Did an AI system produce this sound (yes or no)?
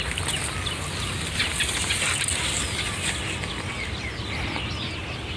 no